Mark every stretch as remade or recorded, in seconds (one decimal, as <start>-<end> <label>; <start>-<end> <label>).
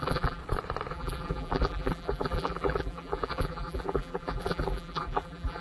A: 0.0-0.4 remade; 0.4-0.9 recorded; 0.9-5.6 remade